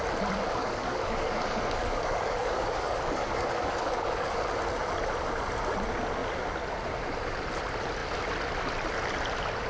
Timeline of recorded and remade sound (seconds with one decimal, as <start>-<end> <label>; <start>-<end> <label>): 0.0-0.6 recorded; 0.6-4.4 remade; 4.4-9.7 recorded